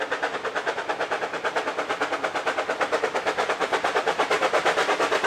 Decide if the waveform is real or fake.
real